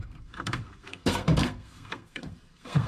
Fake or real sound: fake